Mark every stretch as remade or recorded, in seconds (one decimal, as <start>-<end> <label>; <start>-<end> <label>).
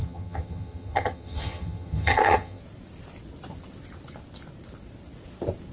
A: 0.0-2.6 remade; 2.6-5.7 recorded